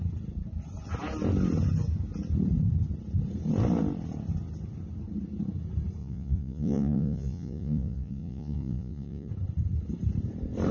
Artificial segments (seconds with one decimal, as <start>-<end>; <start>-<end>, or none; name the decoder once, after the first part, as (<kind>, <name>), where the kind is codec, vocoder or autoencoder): 6.0-9.3 (vocoder, Vocos)